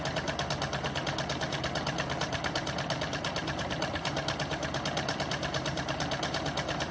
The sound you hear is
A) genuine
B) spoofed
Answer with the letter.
A